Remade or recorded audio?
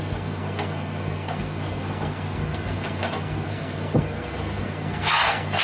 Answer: remade